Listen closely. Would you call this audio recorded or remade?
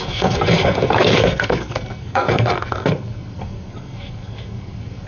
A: remade